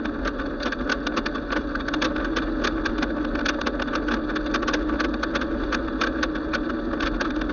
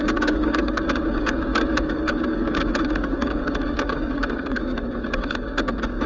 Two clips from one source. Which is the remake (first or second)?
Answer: second